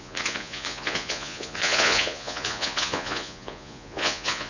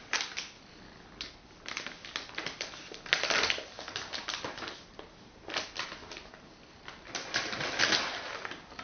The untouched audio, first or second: second